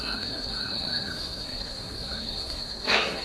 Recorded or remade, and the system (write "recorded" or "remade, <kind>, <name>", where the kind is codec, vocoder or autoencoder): remade, codec, SNAC